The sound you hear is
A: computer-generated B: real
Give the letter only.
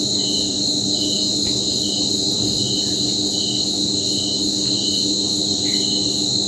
B